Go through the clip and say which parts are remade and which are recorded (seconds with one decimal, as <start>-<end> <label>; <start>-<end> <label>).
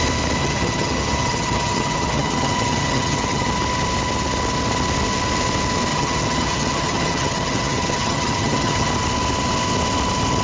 0.0-0.4 recorded; 0.4-3.5 remade; 3.5-5.9 recorded; 5.9-8.9 remade; 8.9-10.4 recorded